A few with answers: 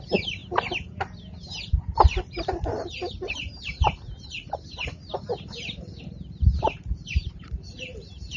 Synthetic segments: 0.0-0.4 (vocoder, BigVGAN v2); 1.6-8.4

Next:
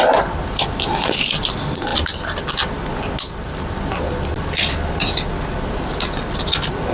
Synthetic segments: none

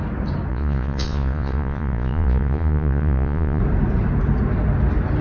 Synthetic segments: 0.5-3.6 (vocoder, Vocos)